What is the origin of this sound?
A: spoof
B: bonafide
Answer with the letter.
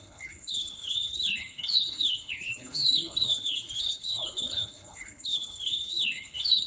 A